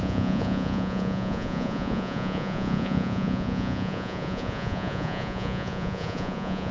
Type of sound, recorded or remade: remade